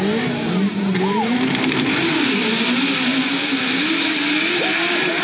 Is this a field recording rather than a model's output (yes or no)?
yes